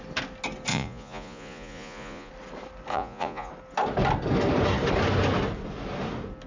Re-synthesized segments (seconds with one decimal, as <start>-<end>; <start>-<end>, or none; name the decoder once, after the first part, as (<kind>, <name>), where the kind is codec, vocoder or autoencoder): 0.7-2.3 (vocoder, Vocos); 2.9-3.5